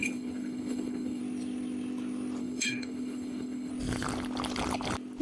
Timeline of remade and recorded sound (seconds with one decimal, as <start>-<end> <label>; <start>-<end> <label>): 0.0-1.2 remade; 1.2-2.4 recorded; 2.4-3.7 remade; 3.7-5.2 recorded